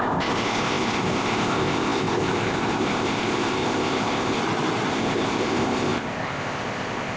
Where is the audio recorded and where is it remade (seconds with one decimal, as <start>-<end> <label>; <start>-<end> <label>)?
0.0-4.4 remade; 4.4-4.9 recorded; 4.9-7.2 remade